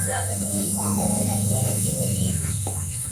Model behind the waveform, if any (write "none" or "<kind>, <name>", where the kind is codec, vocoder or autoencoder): autoencoder, DAC-VAE